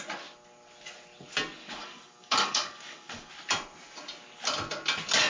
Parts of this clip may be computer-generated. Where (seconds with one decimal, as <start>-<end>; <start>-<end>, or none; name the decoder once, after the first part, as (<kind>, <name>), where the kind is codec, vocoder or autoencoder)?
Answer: 1.6-3.3 (codec, DAC)